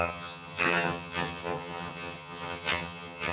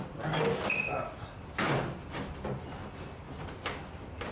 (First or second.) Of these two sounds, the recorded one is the second